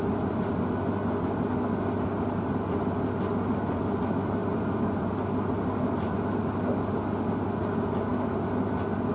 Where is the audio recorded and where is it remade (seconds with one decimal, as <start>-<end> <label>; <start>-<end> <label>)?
0.0-9.1 recorded